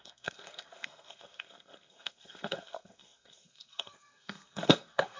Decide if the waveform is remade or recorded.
remade